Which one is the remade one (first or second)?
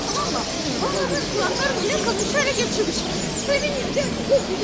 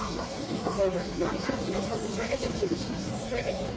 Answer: second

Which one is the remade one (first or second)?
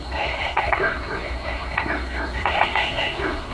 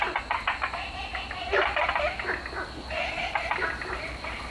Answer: first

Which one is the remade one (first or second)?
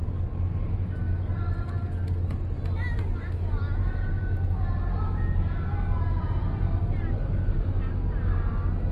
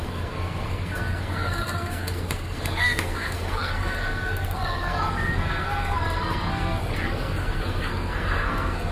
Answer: second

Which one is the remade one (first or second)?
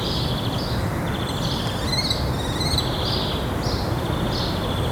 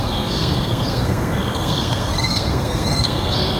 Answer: second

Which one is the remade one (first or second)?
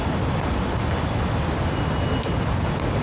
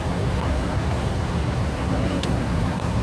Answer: second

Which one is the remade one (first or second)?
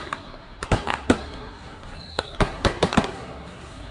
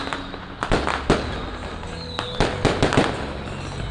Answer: first